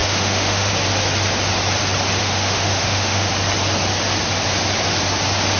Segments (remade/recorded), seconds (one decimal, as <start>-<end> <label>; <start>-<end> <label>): 0.0-0.7 remade; 0.7-2.2 recorded; 2.2-3.3 remade; 3.3-5.6 recorded